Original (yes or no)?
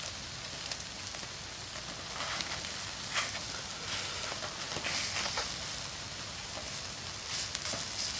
yes